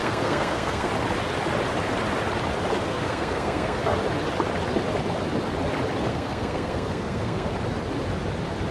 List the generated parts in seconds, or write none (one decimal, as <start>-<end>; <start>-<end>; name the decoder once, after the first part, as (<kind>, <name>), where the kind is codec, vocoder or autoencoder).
0.0-0.9 (codec, SNAC); 2.8-4.0; 6.1-7.5

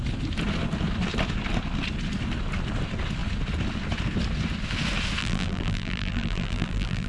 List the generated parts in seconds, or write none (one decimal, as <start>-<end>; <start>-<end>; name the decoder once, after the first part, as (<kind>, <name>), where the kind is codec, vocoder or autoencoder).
5.2-7.1 (vocoder, BigVGAN v2)

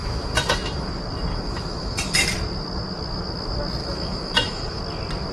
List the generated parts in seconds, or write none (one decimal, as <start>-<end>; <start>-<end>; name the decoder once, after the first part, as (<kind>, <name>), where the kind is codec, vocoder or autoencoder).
0.0-0.9 (autoencoder, DAC-VAE); 1.3-2.3; 3.8-4.8